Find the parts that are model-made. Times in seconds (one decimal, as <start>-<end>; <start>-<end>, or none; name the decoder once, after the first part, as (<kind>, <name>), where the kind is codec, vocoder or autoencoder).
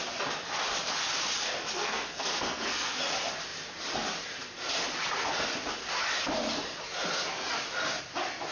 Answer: 1.7-3.0 (codec, SNAC)